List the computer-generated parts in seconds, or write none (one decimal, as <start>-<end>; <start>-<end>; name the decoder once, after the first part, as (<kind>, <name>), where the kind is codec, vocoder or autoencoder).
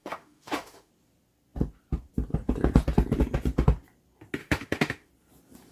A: 0.0-0.9 (autoencoder, DAC-VAE); 4.4-5.1